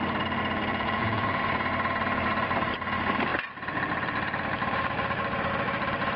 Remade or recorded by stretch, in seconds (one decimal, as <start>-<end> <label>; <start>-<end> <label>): 0.0-0.7 recorded; 0.7-1.4 remade; 1.4-6.2 recorded